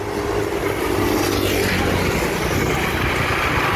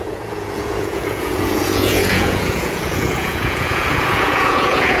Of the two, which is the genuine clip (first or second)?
first